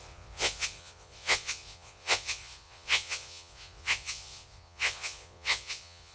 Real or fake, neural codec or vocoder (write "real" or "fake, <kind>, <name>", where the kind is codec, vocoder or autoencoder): fake, vocoder, Vocos